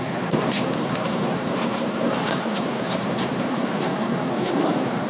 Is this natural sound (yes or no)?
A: no